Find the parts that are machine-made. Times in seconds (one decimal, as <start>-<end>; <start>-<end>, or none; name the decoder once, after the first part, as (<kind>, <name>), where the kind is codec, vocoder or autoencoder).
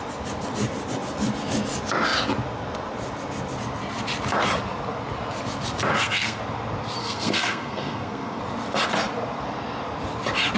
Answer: 5.9-6.4 (codec, SNAC); 7.0-8.4